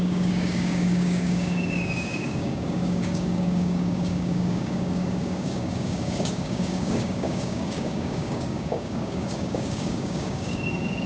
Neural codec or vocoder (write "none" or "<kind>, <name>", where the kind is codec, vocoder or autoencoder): codec, DAC